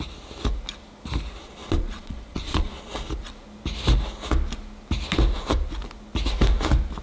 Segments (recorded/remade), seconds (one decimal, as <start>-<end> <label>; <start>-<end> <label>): 0.0-1.4 recorded; 1.4-3.0 remade; 3.0-7.0 recorded